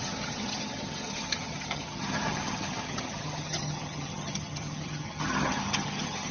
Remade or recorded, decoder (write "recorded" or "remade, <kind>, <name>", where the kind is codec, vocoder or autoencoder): remade, vocoder, HiFi-GAN